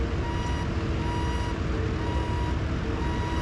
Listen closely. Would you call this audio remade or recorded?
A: recorded